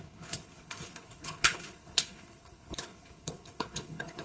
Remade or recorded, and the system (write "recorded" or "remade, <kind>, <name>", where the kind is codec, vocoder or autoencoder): remade, codec, HILCodec